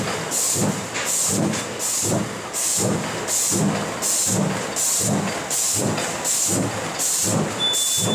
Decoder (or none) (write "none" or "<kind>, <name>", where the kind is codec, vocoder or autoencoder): none